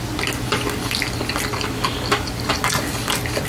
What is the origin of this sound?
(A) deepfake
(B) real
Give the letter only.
B